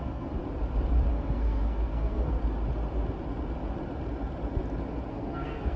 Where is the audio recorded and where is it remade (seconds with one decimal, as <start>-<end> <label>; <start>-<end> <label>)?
0.0-0.4 remade; 0.4-1.1 recorded; 1.1-2.4 remade; 2.4-5.1 recorded; 5.1-5.8 remade